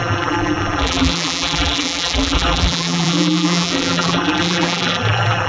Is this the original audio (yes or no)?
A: no